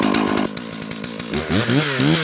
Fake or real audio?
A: real